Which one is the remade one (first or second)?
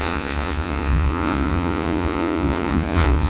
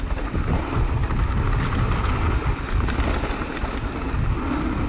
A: first